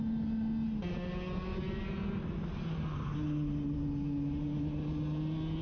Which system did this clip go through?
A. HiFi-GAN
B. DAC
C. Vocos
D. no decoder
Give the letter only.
D